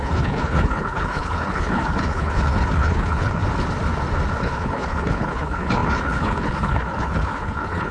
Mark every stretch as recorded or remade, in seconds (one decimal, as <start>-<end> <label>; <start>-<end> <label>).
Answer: 0.0-3.4 remade; 3.4-4.4 recorded; 4.4-7.9 remade